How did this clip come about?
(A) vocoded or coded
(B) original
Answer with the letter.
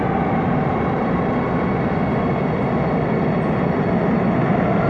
B